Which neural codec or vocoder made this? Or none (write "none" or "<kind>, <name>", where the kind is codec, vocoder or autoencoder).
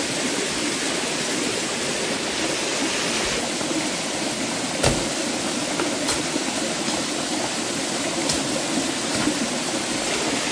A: none